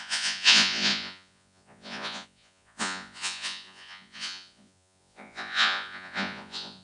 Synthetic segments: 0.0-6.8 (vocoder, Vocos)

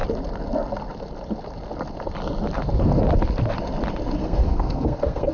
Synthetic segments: 4.2-5.3 (codec, SNAC)

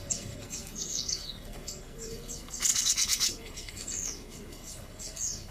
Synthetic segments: 0.0-5.5 (codec, SNAC)

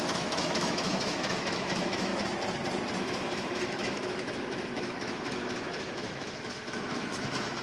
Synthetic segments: 0.0-2.1 (autoencoder, DAC-VAE); 3.0-7.6

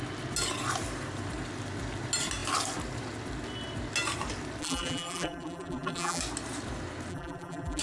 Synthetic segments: 4.6-6.2 (vocoder, BigVGAN v2); 7.1-7.8

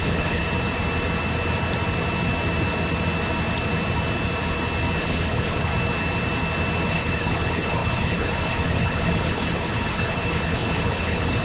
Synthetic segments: 0.0-0.4 (codec, HILCodec); 5.0-5.7; 6.9-11.4

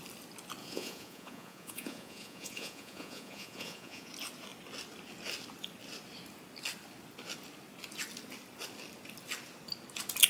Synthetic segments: 0.6-4.1 (vocoder, Vocos)